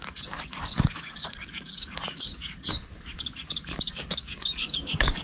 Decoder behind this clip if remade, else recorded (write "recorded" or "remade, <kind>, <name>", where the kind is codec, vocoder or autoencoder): remade, codec, DAC